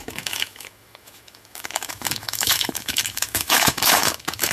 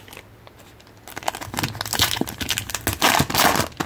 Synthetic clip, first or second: first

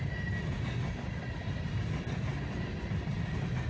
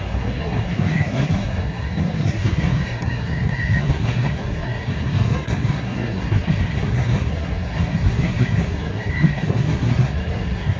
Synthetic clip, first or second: second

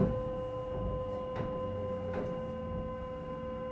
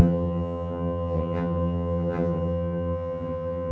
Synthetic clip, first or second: second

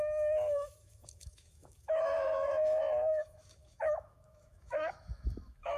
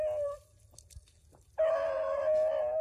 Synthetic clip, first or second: first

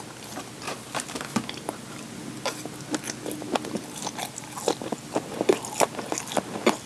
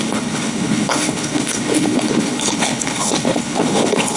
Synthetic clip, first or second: second